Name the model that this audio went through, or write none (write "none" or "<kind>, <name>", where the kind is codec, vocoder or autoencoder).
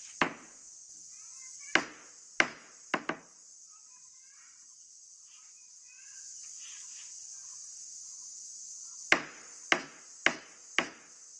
none